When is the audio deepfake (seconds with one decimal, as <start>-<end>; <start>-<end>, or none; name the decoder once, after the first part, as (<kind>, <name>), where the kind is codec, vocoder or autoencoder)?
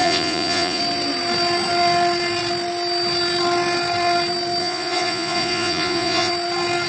0.0-0.8 (vocoder, Vocos); 4.6-6.3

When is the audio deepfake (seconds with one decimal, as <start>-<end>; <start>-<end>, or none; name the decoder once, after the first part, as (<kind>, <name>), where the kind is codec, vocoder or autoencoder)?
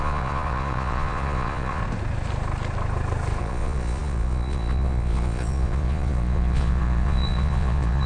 0.0-1.8 (vocoder, Vocos); 3.4-8.1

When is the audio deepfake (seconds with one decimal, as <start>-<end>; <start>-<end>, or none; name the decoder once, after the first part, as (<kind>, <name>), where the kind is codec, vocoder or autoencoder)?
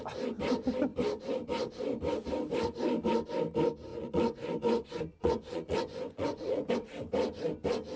3.9-6.7 (vocoder, Vocos)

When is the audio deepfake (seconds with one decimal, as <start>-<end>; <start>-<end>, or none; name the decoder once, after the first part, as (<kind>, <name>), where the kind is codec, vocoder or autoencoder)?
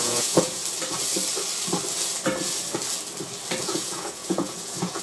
0.0-0.6 (vocoder, Vocos); 3.6-5.0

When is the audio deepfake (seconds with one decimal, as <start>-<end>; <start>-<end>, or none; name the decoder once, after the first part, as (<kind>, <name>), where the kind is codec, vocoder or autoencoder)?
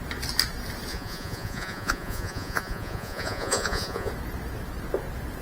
0.9-4.1 (vocoder, Vocos)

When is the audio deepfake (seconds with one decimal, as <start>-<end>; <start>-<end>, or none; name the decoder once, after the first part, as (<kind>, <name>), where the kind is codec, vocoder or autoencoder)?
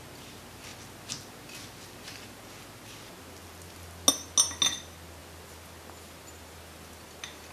none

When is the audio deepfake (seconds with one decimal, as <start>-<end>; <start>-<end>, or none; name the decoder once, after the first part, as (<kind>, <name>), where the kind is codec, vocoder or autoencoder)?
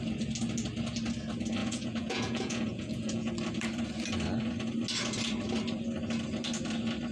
1.6-3.3 (vocoder, Vocos)